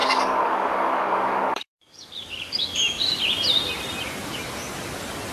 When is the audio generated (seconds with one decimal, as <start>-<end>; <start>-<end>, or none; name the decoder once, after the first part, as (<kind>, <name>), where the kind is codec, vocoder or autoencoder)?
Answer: 0.0-3.2 (codec, DAC)